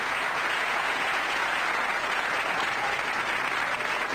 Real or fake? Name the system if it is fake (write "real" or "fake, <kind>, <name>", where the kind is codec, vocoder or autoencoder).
fake, vocoder, Vocos